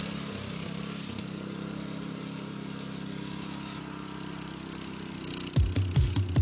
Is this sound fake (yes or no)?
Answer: no